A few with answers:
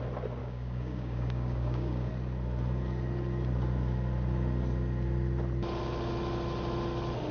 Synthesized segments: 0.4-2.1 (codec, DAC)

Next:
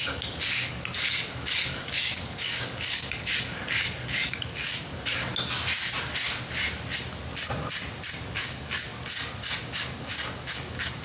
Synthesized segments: 0.0-5.3 (codec, DAC); 8.4-8.9; 9.7-11.0

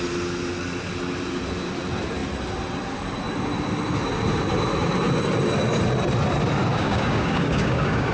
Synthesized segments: 6.7-8.1 (codec, DAC)